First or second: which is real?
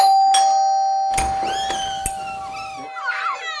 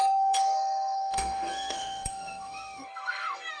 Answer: first